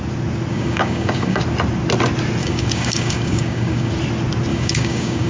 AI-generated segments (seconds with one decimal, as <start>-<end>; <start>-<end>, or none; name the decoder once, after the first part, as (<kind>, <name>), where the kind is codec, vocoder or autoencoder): 0.5-1.4 (codec, DAC); 2.4-3.9; 4.5-5.3